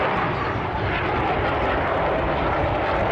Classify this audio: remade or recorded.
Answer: recorded